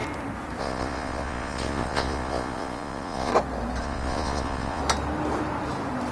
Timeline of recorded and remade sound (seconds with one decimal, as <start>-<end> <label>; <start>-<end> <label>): 0.0-0.6 recorded; 0.6-3.3 remade; 3.3-3.8 recorded; 3.8-4.8 remade; 4.8-6.1 recorded